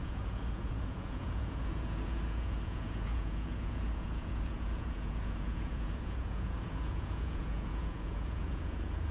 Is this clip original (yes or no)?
no